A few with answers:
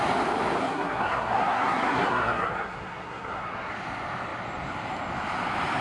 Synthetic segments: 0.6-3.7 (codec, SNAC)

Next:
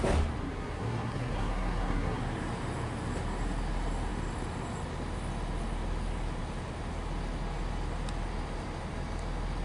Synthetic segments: 0.4-2.2 (codec, SNAC)

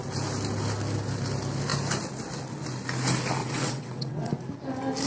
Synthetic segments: 3.4-4.4 (vocoder, WaveNeXt)